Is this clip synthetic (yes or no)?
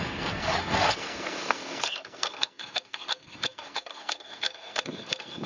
yes